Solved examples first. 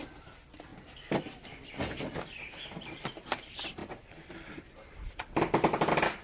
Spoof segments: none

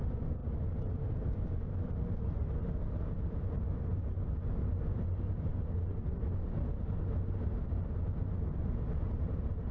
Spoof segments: none

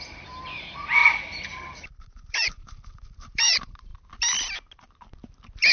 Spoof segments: 0.0-3.9 (vocoder, BigVGAN v2)

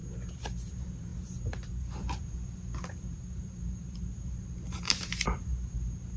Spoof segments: 0.7-6.2 (vocoder, BigVGAN v2)

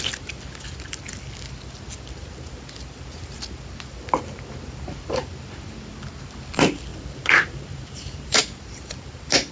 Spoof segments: 6.9-8.4 (vocoder, BigVGAN v2)

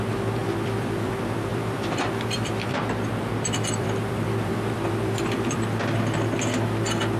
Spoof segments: 0.4-1.1 (vocoder, BigVGAN v2); 1.5-5.8

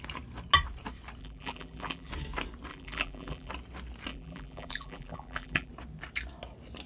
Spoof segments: 1.2-2.1 (vocoder, BigVGAN v2); 2.7-3.5; 4.1-5.7